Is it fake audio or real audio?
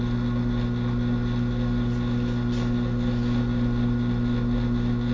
real